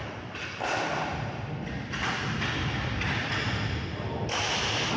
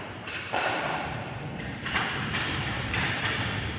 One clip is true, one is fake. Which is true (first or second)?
first